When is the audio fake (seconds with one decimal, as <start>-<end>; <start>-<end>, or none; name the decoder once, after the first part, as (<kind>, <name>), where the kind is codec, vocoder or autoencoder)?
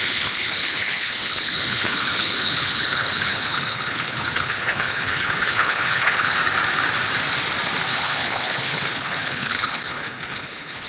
0.0-6.4 (codec, HILCodec); 7.9-10.9